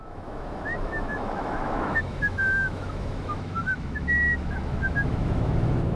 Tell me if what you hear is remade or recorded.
remade